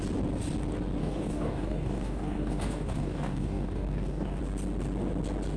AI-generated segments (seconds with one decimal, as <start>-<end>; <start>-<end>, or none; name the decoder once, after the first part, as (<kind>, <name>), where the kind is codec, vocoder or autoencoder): 1.0-4.4 (codec, DAC)